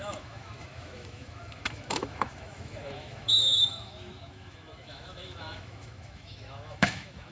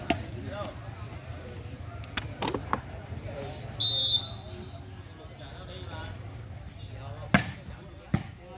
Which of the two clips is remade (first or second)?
first